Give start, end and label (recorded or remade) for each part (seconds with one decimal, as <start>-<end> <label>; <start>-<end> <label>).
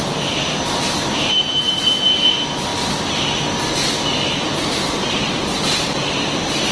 0.0-6.7 recorded